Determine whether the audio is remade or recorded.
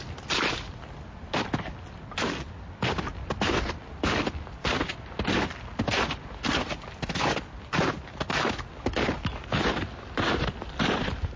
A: recorded